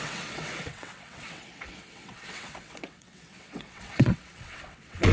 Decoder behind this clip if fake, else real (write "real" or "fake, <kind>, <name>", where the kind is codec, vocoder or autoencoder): fake, vocoder, WaveNeXt